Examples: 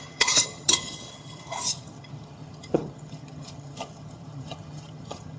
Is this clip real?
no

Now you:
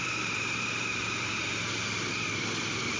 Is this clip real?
no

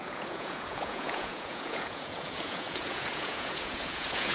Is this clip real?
no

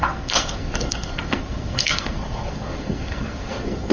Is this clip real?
no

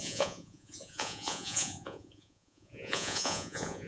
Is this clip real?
no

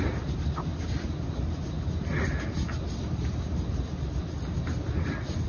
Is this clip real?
yes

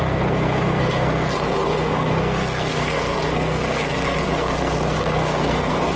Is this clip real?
no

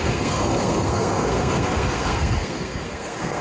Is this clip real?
no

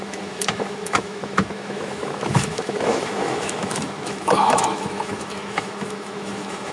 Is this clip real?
no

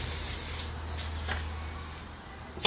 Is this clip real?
yes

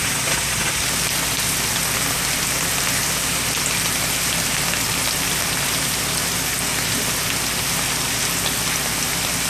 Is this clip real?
yes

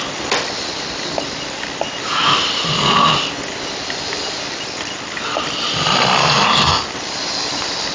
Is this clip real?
no